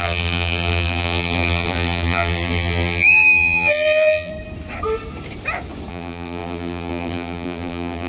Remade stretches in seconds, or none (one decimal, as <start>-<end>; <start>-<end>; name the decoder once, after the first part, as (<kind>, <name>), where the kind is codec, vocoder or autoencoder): 0.0-4.3 (vocoder, BigVGAN v2); 5.9-8.1